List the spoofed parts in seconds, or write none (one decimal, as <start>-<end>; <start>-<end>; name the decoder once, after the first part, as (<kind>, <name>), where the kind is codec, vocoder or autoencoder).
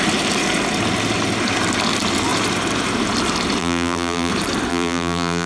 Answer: 3.6-4.3 (vocoder, BigVGAN v2); 4.7-5.5